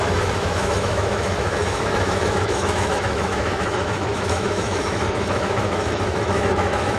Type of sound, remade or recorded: remade